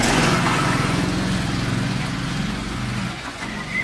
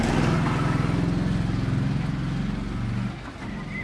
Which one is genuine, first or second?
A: second